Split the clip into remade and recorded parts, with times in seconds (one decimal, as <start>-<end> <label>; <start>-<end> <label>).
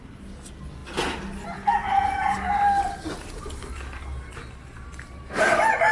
0.0-5.9 recorded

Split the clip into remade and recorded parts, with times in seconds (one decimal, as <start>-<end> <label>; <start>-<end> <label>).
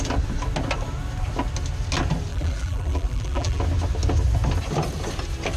0.0-2.3 recorded; 2.3-3.6 remade; 3.6-5.6 recorded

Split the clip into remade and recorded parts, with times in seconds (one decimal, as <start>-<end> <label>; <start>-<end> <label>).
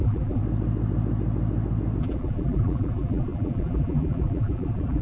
0.0-0.4 remade; 0.4-2.0 recorded; 2.0-5.0 remade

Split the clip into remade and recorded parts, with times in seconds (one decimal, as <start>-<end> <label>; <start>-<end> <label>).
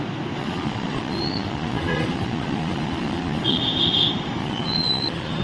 0.0-0.4 recorded; 0.4-3.6 remade; 3.6-4.4 recorded; 4.4-5.4 remade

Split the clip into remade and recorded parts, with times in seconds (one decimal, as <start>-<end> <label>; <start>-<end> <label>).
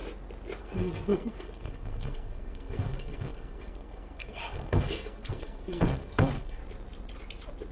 0.0-0.6 recorded; 0.6-6.6 remade; 6.6-7.7 recorded